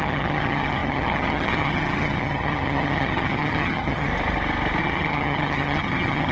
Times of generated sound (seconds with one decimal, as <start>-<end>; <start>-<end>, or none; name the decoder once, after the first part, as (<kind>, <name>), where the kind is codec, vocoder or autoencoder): 0.0-4.1 (vocoder, HiFi-GAN); 4.8-6.3